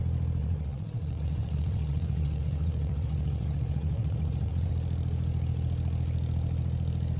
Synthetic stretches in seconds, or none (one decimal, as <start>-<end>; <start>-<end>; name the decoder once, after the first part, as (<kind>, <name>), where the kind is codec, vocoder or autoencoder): 0.4-4.7 (vocoder, WaveNeXt)